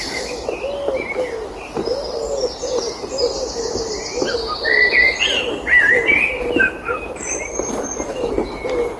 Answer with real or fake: real